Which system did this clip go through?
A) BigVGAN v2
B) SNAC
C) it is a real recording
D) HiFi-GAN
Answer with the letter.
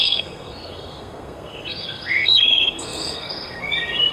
B